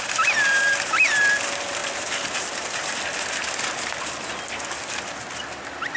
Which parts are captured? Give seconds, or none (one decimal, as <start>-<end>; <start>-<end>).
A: 0.0-6.0